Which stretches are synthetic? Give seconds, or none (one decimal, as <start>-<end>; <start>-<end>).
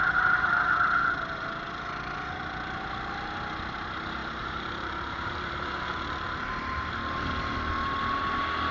4.2-6.9